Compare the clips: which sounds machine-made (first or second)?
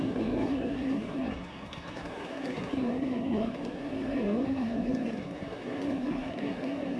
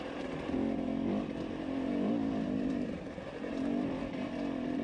first